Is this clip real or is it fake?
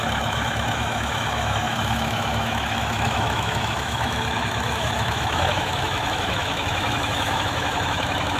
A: fake